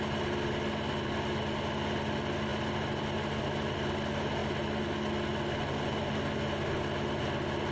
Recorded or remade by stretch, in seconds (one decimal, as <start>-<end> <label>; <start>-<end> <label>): 0.0-7.7 recorded